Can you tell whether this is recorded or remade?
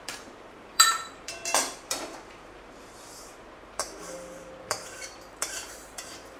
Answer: remade